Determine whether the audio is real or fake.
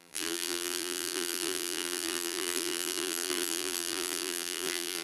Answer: fake